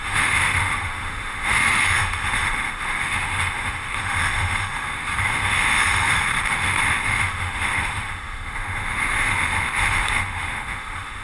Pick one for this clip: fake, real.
fake